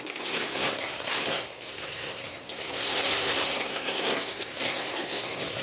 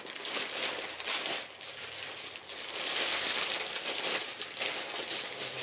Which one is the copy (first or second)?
first